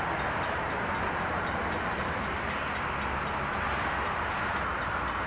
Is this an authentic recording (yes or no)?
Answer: yes